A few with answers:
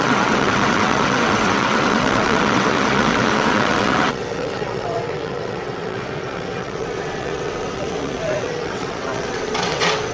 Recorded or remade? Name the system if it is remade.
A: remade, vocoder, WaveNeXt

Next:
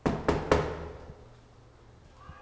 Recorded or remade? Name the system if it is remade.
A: recorded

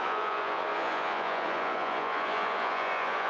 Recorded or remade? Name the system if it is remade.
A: remade, vocoder, Vocos